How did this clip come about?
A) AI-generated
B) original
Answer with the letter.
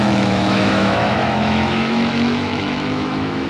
A